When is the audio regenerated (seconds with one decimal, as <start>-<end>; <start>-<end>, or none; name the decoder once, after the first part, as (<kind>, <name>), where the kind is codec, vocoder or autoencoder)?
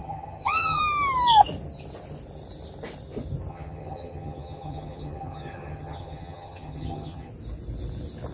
0.0-0.8 (vocoder, HiFi-GAN); 3.5-7.3